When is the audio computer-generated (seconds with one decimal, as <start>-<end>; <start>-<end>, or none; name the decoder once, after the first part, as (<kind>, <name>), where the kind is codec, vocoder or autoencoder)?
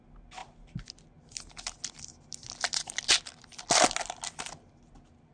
none